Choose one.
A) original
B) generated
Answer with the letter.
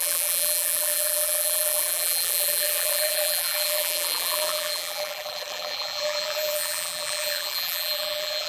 B